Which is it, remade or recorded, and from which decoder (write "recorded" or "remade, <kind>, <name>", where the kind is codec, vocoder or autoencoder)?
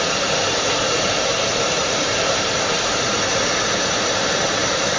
remade, vocoder, BigVGAN v2